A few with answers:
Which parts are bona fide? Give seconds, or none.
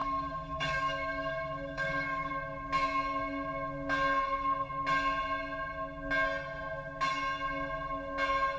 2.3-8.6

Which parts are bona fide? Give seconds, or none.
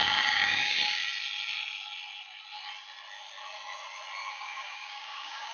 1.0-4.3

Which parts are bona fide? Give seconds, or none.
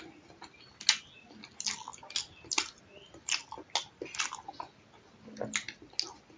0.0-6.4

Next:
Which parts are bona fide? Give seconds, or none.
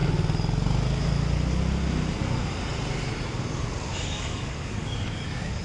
0.0-3.9